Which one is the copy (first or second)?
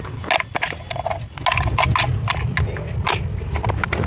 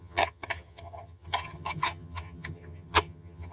second